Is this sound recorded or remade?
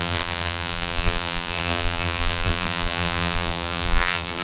remade